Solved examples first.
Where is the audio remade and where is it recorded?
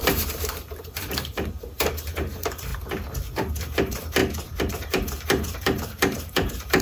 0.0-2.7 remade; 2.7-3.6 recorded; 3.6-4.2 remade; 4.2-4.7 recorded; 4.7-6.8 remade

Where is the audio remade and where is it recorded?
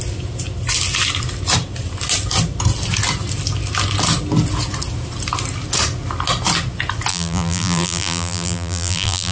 0.0-7.1 recorded; 7.1-9.3 remade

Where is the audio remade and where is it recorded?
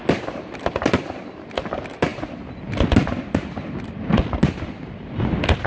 0.0-5.7 recorded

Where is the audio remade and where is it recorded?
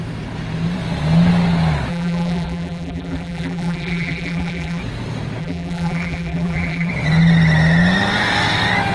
0.0-1.9 recorded; 1.9-4.8 remade; 4.8-5.4 recorded; 5.4-6.9 remade; 6.9-8.9 recorded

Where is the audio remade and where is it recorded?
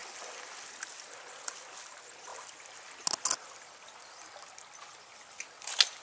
0.0-6.0 recorded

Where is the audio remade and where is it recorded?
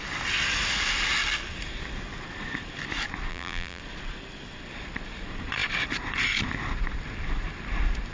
0.0-3.3 recorded; 3.3-3.8 remade; 3.8-8.1 recorded